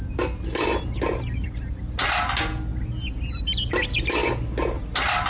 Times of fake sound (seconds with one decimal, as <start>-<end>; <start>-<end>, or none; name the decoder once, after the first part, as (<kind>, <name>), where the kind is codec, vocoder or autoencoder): none